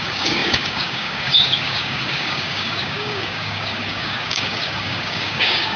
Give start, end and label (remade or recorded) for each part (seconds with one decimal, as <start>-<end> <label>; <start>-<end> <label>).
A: 0.0-5.8 remade

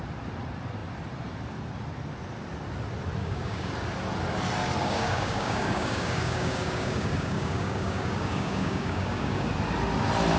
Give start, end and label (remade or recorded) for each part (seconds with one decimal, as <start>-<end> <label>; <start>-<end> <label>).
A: 0.0-3.2 recorded; 3.2-3.7 remade; 3.7-4.8 recorded; 4.8-9.5 remade; 9.5-10.4 recorded

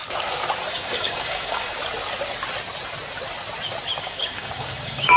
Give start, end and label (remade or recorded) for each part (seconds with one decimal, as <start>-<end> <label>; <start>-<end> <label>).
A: 0.0-0.7 recorded; 0.7-1.8 remade; 1.8-4.0 recorded; 4.0-5.2 remade

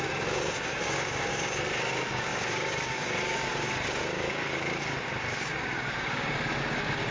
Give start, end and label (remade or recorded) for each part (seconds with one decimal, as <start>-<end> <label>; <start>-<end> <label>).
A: 0.0-7.1 remade